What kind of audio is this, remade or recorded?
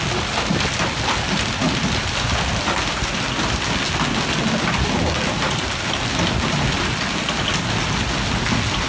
recorded